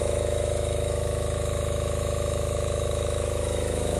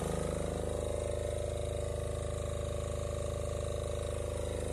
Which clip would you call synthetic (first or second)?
first